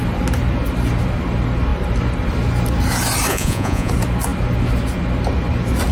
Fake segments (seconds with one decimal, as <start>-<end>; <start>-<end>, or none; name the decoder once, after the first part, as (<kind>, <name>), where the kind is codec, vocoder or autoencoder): 3.3-3.9 (vocoder, Vocos)